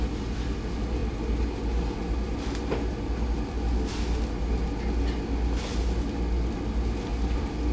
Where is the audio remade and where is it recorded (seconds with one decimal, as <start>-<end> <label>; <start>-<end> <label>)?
0.0-7.7 recorded

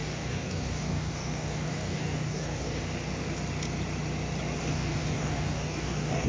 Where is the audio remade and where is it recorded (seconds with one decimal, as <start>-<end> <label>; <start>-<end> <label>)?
0.0-2.8 remade; 2.8-4.6 recorded; 4.6-6.3 remade